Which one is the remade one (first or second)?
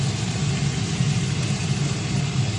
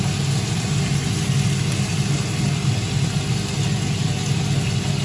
first